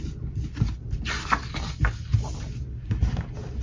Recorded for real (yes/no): yes